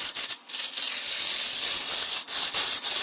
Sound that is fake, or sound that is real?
real